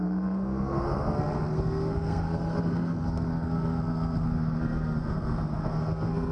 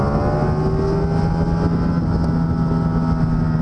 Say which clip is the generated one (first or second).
first